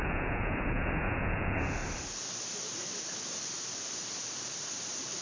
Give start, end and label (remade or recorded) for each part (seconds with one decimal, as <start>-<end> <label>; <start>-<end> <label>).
0.0-1.8 remade; 1.8-5.2 recorded